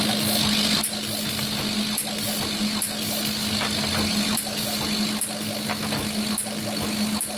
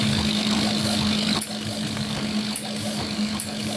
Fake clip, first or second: second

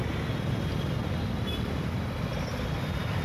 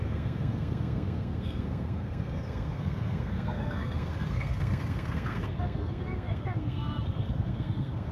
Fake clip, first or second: second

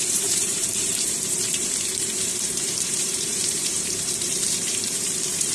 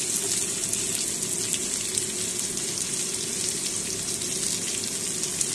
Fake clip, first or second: first